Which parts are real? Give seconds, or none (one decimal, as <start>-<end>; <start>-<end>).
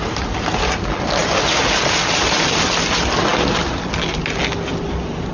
0.0-5.3